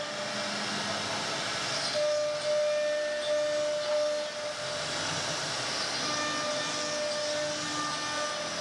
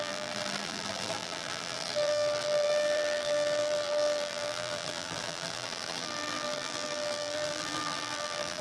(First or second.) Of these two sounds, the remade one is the second